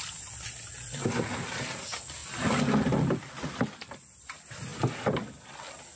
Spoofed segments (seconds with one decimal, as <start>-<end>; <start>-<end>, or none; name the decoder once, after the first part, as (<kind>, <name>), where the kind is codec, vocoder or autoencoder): none